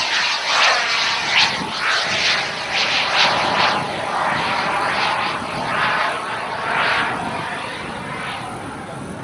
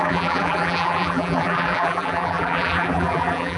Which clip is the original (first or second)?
first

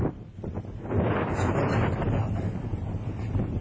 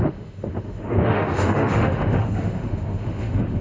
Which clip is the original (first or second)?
first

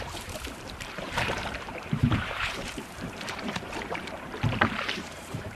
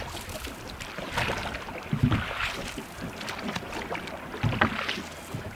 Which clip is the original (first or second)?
second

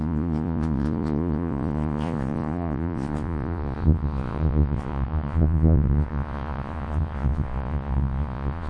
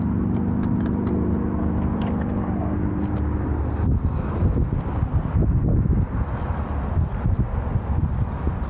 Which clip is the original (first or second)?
second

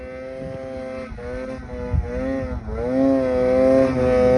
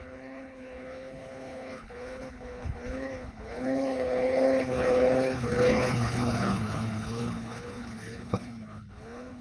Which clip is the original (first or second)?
first